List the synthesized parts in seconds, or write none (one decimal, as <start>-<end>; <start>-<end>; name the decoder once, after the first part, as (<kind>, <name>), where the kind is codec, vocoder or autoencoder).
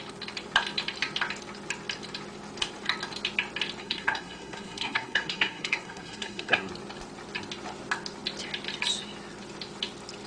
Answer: 3.8-6.7 (codec, SNAC)